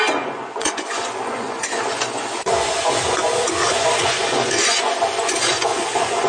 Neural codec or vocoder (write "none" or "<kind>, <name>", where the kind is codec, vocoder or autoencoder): vocoder, Vocos